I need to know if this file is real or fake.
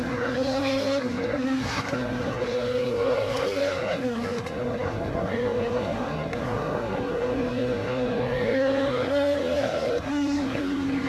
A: fake